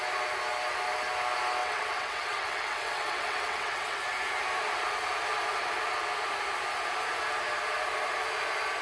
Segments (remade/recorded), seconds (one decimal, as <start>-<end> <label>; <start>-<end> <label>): 0.0-1.6 recorded; 1.6-4.0 remade; 4.0-8.8 recorded